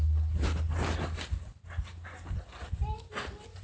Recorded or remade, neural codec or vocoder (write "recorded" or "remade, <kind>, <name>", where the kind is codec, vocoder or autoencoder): recorded